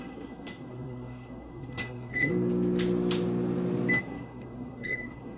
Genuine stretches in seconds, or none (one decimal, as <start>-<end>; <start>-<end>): 2.3-4.0